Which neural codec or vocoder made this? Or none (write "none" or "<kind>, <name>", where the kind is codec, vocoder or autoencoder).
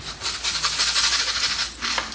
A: none